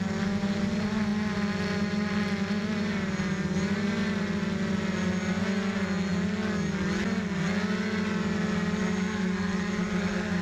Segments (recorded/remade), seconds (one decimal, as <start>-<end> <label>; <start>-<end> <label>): 0.0-10.4 recorded